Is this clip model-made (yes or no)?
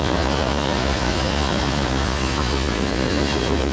yes